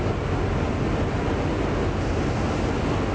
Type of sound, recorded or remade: recorded